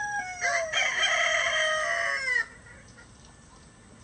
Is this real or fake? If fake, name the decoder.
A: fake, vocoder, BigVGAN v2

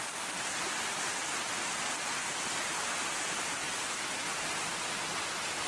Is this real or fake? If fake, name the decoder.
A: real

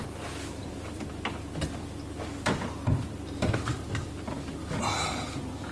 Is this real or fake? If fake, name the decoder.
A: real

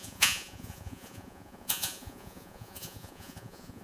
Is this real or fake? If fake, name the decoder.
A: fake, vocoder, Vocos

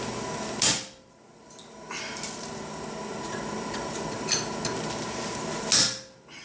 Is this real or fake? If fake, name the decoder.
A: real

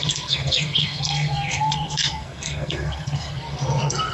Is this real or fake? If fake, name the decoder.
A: fake, codec, SNAC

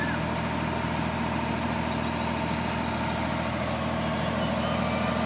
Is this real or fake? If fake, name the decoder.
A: real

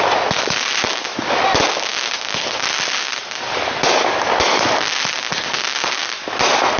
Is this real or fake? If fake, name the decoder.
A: real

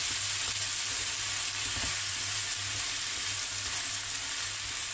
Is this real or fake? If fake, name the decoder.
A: real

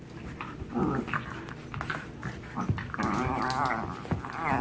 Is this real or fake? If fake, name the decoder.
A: real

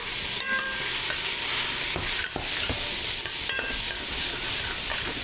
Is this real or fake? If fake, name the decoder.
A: fake, vocoder, BigVGAN v2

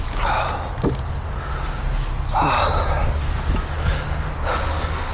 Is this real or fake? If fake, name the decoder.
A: real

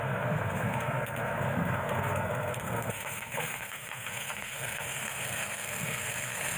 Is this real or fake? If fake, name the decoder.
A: fake, codec, SNAC